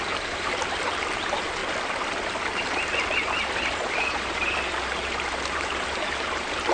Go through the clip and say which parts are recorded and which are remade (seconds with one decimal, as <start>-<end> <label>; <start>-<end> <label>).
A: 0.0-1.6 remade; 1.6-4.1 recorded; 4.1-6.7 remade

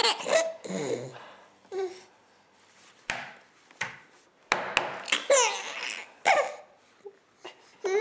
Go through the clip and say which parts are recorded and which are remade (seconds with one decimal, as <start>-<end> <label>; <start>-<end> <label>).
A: 0.0-0.7 remade; 0.7-1.1 recorded; 1.1-3.0 remade; 3.0-8.0 recorded

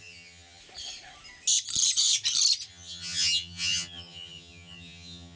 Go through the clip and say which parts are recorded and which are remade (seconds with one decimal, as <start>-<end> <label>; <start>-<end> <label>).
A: 0.0-0.6 remade; 0.6-2.7 recorded; 2.7-5.4 remade

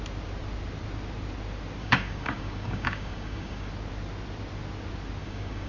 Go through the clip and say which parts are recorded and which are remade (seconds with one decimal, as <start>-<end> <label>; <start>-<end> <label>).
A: 0.0-1.8 recorded; 1.8-3.7 remade; 3.7-5.2 recorded; 5.2-5.7 remade

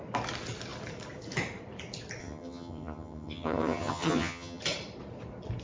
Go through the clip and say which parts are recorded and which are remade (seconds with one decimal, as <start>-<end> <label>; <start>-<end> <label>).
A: 0.0-2.2 recorded; 2.2-4.6 remade; 4.6-5.6 recorded

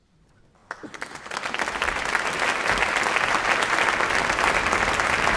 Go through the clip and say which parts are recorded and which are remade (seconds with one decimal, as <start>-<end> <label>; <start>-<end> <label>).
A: 0.0-5.4 recorded

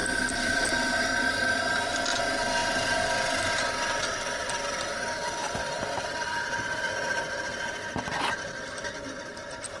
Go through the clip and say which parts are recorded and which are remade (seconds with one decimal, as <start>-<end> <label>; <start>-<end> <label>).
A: 0.0-0.7 remade; 0.7-2.6 recorded; 2.6-3.5 remade; 3.5-4.4 recorded; 4.4-4.9 remade; 4.9-5.4 recorded; 5.4-7.6 remade; 7.6-9.8 recorded

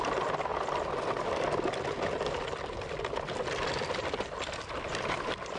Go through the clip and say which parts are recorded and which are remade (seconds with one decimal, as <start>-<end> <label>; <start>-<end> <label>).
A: 0.0-5.6 recorded